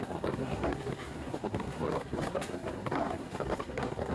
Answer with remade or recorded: remade